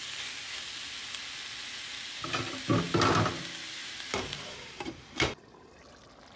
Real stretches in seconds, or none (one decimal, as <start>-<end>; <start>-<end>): 0.0-3.8; 5.8-6.4